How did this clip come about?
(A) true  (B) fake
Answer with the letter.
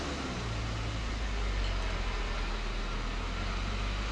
A